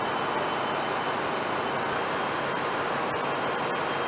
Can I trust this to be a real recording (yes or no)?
yes